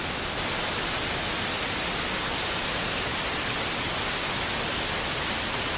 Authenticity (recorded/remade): recorded